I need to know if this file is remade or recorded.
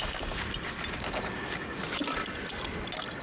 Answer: recorded